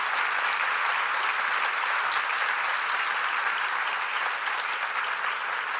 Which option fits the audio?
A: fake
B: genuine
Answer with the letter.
B